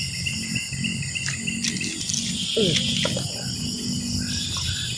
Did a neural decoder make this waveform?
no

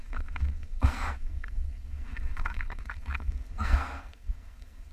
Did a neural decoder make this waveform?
yes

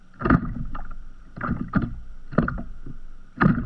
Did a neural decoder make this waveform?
no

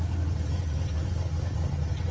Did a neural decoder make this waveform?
no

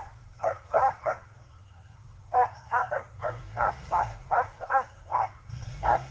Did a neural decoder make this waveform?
yes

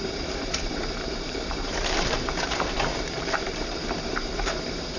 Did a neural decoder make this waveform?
yes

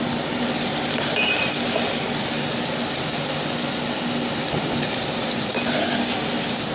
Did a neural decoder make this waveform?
no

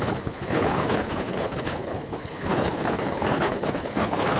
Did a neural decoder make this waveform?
yes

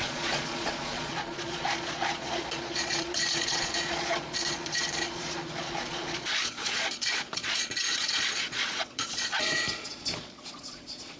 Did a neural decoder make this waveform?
yes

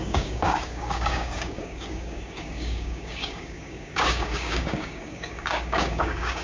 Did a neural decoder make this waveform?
yes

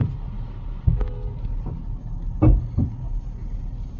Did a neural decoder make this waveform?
no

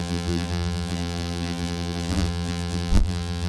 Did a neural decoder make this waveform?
yes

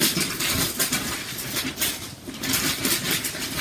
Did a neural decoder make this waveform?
no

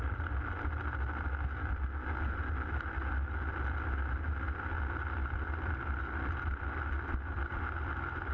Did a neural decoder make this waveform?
no